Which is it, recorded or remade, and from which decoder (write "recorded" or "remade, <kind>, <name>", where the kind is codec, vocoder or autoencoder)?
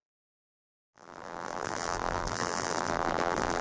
remade, vocoder, BigVGAN v2